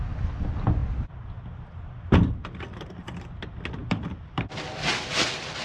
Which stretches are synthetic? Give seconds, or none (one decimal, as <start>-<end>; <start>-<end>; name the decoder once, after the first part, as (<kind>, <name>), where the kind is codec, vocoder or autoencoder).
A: 3.8-5.1 (vocoder, BigVGAN v2)